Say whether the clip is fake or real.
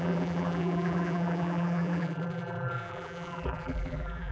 fake